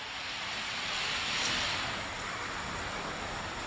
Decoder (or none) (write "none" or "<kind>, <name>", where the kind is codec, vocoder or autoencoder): none